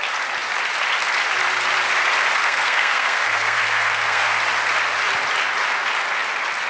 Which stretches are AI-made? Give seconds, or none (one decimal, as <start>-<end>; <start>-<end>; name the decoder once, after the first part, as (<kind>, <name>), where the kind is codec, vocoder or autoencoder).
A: 2.4-4.4 (codec, SNAC)